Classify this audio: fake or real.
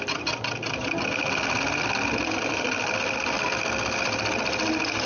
real